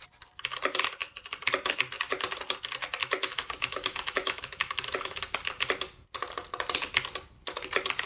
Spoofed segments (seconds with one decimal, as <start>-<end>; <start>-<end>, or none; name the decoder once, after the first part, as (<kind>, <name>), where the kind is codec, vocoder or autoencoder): 3.0-5.2 (autoencoder, DAC-VAE)